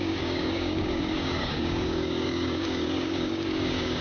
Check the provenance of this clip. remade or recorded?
remade